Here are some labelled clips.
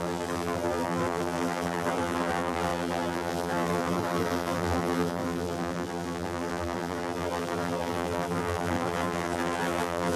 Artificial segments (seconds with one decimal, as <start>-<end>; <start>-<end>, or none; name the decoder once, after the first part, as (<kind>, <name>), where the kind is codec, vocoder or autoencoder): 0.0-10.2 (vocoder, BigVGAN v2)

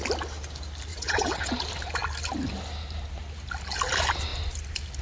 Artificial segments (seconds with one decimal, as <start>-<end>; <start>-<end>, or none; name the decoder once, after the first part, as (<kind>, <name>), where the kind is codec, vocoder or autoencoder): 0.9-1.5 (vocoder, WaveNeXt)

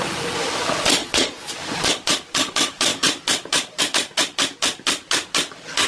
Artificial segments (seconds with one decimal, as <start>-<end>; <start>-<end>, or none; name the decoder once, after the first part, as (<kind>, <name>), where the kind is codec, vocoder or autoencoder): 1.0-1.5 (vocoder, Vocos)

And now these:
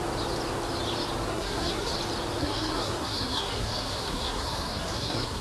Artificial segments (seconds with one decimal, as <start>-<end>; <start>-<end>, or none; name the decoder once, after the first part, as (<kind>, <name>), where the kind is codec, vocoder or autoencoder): 1.3-1.9 (codec, SNAC); 2.4-5.4

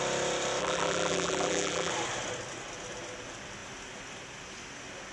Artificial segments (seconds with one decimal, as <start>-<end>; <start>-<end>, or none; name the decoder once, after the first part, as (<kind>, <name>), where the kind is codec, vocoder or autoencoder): 0.6-1.9 (vocoder, BigVGAN v2)

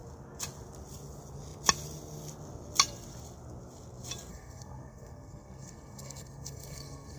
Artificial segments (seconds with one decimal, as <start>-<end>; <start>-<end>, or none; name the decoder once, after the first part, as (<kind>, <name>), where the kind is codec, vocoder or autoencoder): 4.3-7.2 (codec, SNAC)

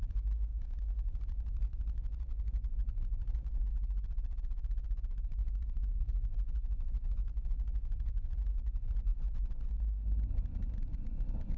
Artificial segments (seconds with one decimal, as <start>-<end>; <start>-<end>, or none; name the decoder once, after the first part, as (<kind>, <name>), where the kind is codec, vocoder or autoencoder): 0.0-11.6 (vocoder, Vocos)